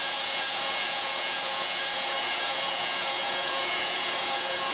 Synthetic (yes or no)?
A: yes